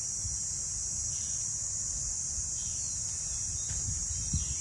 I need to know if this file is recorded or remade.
recorded